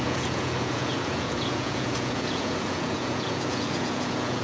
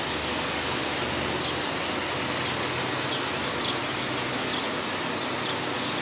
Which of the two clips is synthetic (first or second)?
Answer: first